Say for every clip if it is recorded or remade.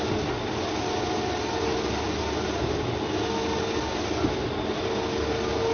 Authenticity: recorded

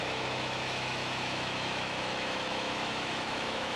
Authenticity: remade